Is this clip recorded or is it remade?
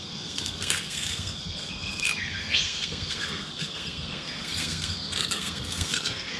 remade